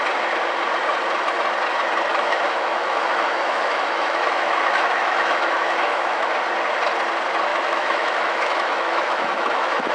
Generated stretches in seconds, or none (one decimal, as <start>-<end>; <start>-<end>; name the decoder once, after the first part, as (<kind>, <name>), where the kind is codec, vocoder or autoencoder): 2.1-6.3 (autoencoder, DAC-VAE); 7.5-9.9